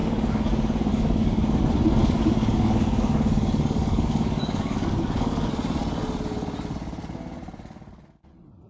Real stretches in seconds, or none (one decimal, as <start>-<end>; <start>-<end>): 0.5-0.9; 1.6-2.0; 5.5-8.7